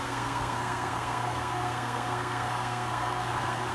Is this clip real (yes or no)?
no